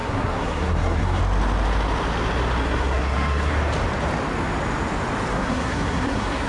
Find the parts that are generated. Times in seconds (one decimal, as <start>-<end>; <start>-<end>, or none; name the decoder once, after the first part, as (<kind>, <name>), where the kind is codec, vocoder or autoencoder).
0.0-1.2 (codec, SNAC); 2.6-3.5; 5.3-6.5